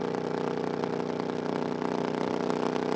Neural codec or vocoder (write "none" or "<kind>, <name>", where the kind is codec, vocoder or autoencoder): none